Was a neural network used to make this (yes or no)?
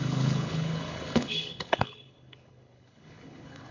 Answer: yes